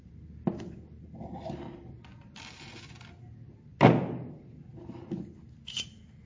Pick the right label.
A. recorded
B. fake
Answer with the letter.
A